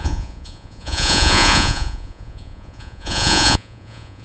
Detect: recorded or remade remade